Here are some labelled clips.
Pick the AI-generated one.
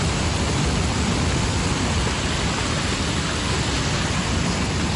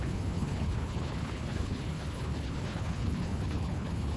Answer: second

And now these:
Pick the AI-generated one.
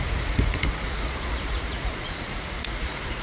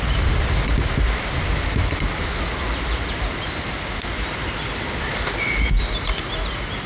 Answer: first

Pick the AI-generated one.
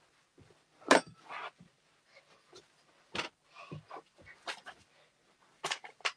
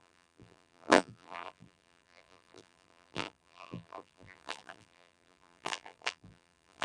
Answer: second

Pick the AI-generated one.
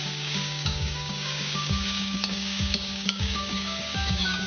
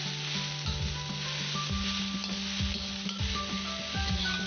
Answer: first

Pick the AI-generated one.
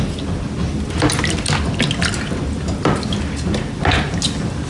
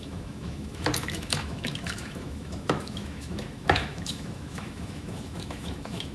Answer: second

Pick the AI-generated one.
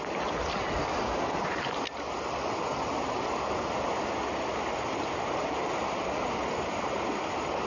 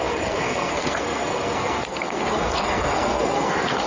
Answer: second